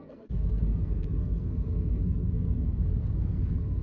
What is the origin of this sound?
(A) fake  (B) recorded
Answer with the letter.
A